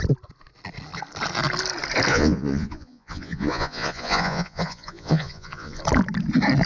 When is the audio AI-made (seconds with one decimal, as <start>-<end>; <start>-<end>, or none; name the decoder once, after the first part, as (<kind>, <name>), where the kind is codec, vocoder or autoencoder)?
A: 2.1-5.8 (vocoder, Vocos)